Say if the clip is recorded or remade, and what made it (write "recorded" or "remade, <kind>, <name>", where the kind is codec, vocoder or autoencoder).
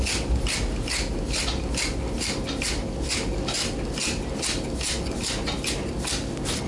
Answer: recorded